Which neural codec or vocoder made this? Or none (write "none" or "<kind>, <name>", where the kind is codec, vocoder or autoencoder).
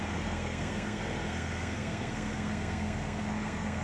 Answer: codec, SNAC